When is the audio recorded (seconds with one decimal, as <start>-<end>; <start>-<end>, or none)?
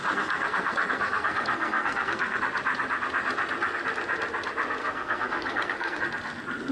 2.4-4.8; 6.0-6.7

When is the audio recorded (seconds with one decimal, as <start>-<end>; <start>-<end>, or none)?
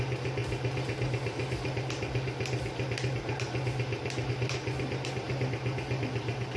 0.0-6.6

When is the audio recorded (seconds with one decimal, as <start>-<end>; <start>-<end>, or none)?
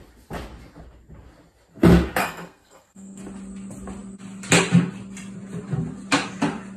0.0-2.2; 3.2-6.8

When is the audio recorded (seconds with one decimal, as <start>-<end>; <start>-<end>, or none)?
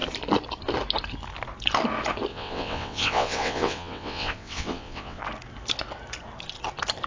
0.0-2.3; 5.2-7.1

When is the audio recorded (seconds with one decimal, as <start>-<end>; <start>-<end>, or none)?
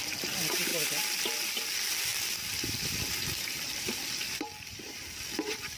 0.7-1.5; 2.1-4.3